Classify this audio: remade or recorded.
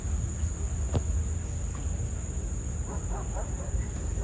recorded